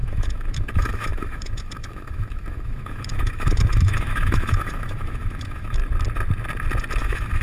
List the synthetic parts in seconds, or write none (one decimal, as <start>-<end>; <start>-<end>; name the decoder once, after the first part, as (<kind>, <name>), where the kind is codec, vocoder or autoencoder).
0.0-5.8 (autoencoder, DAC-VAE); 7.0-7.4